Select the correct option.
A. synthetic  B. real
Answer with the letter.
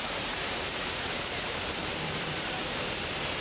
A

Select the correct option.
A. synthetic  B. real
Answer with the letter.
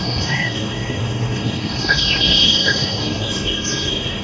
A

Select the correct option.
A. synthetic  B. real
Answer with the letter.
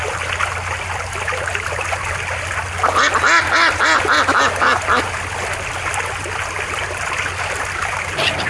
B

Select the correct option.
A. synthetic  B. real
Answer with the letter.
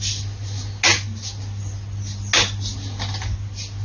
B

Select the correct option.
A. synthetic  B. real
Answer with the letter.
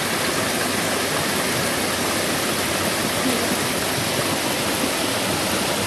B